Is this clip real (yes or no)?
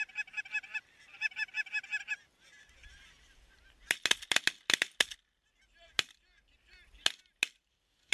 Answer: yes